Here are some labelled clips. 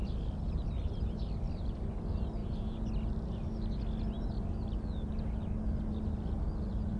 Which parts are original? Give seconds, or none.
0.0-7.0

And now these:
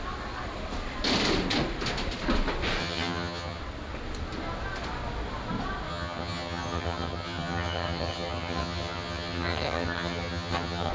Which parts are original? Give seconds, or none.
0.0-2.8; 3.6-5.9

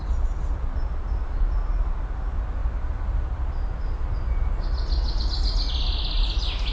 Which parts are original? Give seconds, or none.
0.0-6.7

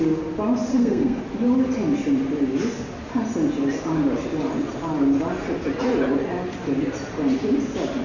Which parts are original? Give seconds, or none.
0.0-0.7; 1.2-8.0

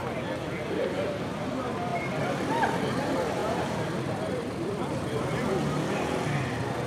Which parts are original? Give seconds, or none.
0.0-1.9; 2.8-3.4; 5.3-6.9

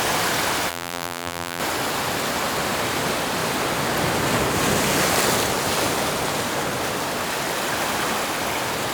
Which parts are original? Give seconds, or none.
0.0-0.7; 1.6-8.9